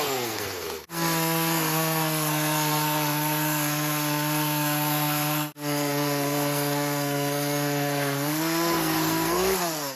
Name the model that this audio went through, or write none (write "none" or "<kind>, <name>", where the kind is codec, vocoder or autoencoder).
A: codec, SNAC